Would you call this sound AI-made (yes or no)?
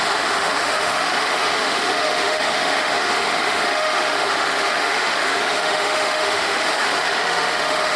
yes